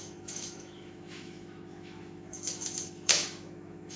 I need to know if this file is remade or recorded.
remade